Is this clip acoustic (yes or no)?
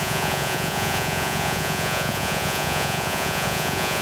no